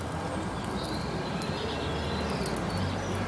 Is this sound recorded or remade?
recorded